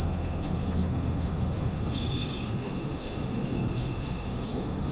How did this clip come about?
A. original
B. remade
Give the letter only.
B